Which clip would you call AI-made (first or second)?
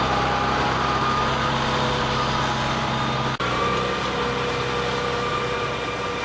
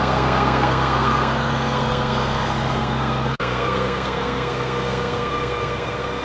second